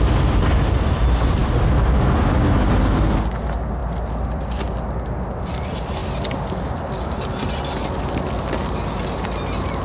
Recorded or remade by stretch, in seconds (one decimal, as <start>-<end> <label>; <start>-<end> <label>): 0.0-9.8 recorded